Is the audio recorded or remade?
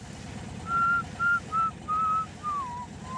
recorded